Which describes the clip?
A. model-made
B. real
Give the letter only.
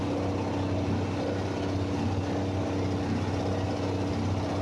B